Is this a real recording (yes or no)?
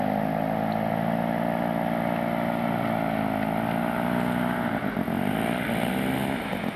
yes